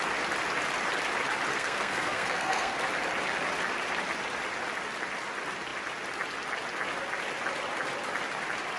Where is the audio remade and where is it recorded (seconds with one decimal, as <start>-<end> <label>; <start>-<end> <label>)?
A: 0.0-1.5 recorded; 1.5-2.8 remade; 2.8-8.8 recorded